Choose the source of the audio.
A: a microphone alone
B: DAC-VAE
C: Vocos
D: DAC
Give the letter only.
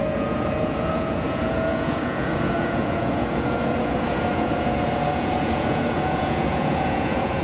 C